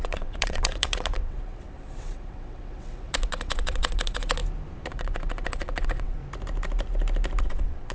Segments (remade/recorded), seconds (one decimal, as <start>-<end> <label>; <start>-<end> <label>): 0.0-4.4 remade; 4.4-4.9 recorded; 4.9-6.2 remade; 6.2-7.4 recorded; 7.4-7.9 remade